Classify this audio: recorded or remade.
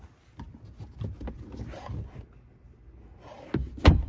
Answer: recorded